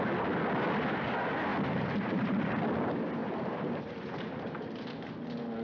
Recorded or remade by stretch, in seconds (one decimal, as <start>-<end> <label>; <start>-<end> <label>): 0.0-1.5 recorded; 1.5-2.6 remade; 2.6-3.2 recorded; 3.2-4.7 remade; 4.7-5.6 recorded